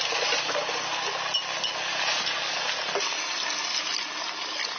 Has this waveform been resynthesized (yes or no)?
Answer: no